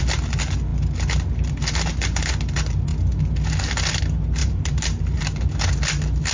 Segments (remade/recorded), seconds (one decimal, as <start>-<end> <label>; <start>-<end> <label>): 0.0-4.4 recorded; 4.4-5.6 remade; 5.6-6.3 recorded